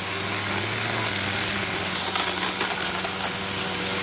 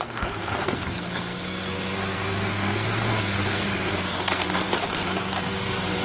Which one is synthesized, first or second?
second